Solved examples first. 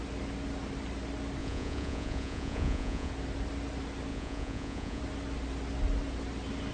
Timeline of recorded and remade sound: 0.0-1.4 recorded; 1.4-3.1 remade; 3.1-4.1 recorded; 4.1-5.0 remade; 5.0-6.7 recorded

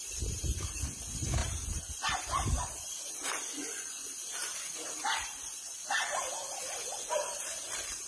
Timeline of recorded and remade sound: 0.0-3.5 recorded; 3.5-4.1 remade; 4.1-8.1 recorded

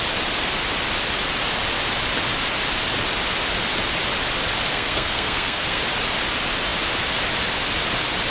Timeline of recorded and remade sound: 0.0-4.7 recorded; 4.7-5.8 remade; 5.8-8.3 recorded

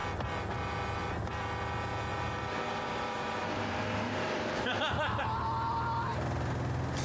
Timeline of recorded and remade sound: 0.0-2.1 recorded; 2.1-5.2 remade; 5.2-7.0 recorded